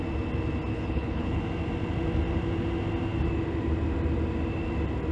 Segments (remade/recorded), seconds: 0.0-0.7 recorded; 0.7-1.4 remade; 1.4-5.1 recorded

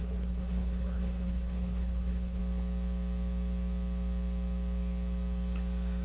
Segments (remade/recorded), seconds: 0.0-2.4 remade; 2.4-6.0 recorded

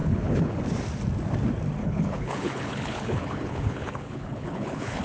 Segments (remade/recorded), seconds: 0.0-0.6 remade; 0.6-1.8 recorded; 1.8-5.0 remade

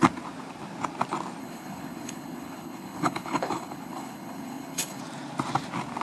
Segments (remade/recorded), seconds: 0.0-1.4 recorded; 1.4-5.0 remade; 5.0-6.0 recorded